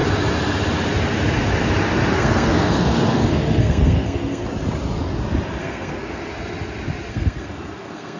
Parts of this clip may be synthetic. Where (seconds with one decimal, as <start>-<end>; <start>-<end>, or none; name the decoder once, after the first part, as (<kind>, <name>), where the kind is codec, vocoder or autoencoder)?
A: 2.1-4.4 (codec, SNAC); 5.6-6.2; 7.1-8.2